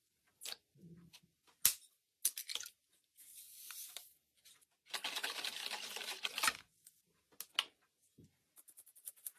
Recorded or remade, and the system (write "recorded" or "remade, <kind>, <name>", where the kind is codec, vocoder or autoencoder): recorded